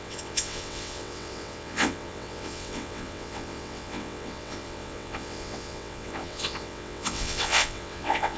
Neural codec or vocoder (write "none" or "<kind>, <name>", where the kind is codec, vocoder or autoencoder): vocoder, WaveNeXt